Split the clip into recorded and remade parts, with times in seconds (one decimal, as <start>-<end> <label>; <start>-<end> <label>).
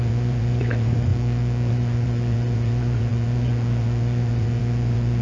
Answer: 0.0-1.1 remade; 1.1-1.7 recorded; 1.7-5.2 remade